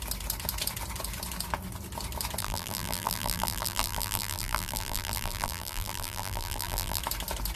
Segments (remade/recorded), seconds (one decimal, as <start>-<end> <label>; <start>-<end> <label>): 0.0-2.4 recorded; 2.4-7.0 remade; 7.0-7.6 recorded